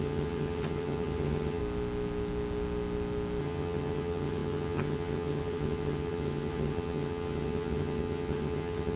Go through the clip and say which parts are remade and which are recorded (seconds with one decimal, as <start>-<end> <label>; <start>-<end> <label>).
0.0-1.6 remade; 1.6-3.4 recorded; 3.4-9.0 remade